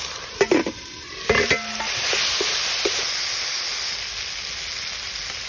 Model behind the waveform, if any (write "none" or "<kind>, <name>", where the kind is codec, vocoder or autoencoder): none